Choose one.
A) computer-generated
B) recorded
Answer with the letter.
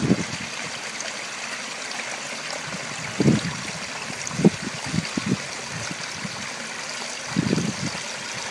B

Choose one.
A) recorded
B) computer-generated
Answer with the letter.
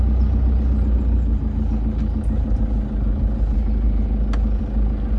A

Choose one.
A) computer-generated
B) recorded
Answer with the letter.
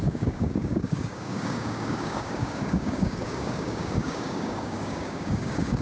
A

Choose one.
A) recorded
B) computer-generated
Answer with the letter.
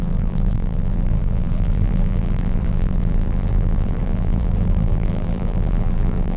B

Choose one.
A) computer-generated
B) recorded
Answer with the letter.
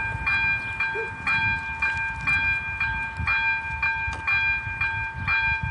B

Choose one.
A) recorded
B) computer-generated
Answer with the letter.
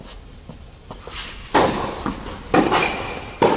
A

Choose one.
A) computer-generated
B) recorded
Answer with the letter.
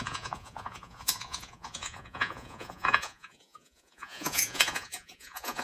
A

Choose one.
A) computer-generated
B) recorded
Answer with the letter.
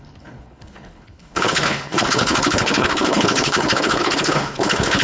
A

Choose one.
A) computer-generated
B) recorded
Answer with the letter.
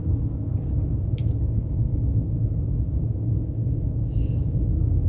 A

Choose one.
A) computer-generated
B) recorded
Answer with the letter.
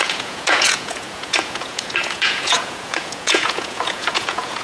A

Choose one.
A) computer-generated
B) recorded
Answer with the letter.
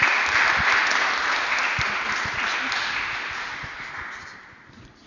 B